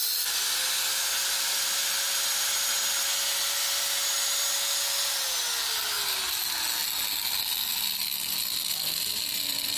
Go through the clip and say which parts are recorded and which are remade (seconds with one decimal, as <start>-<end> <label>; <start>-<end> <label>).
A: 0.0-9.8 recorded